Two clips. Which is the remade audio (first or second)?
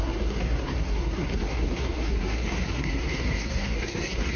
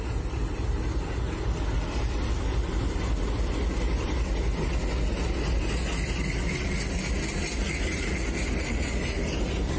first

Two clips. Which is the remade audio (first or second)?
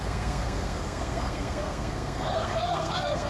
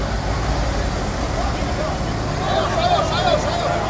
first